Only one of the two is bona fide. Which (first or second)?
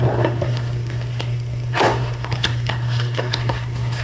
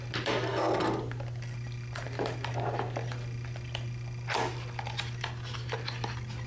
second